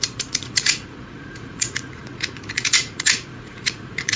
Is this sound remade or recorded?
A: remade